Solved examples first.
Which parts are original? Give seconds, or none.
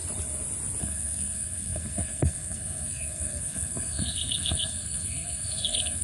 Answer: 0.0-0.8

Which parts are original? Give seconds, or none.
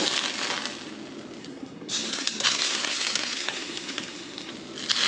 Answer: 0.0-1.4; 4.5-5.1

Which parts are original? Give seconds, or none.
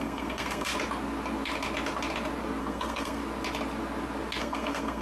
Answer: 0.7-2.6; 3.2-4.4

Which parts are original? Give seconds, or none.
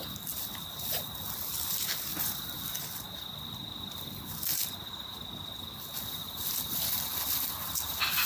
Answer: 0.0-8.3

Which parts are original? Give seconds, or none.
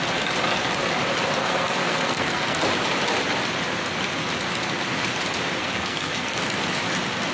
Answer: 0.0-1.4; 2.6-5.6; 6.4-7.3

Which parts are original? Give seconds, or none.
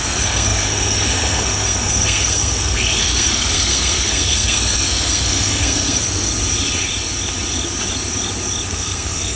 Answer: 6.3-8.7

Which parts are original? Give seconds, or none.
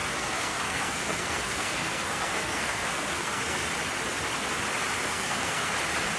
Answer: 3.7-5.0; 5.7-6.2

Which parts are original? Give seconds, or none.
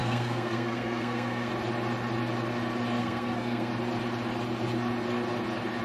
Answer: 1.5-3.0; 3.7-5.8